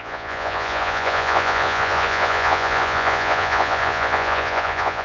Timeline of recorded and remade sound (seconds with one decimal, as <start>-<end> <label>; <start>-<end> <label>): 0.0-5.0 remade